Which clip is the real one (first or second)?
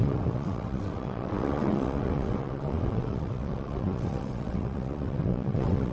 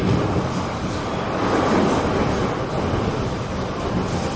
second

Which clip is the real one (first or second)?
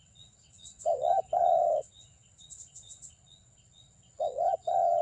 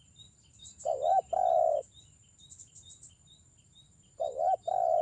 second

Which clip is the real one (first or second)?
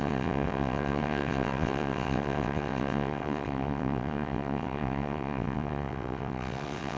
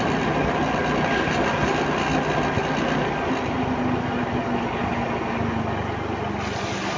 second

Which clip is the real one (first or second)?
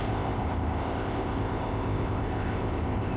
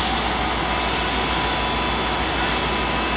second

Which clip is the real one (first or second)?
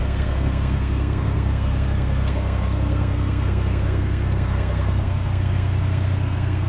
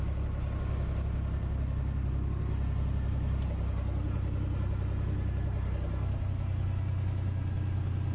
second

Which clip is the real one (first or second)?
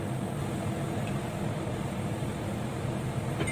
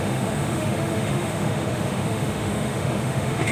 first